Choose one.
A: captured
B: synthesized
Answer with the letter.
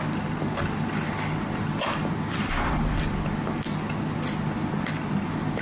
A